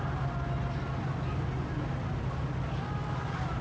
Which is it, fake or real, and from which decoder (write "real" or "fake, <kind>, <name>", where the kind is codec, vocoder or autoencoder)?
real